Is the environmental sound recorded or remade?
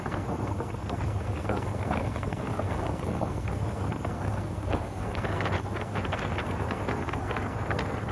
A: remade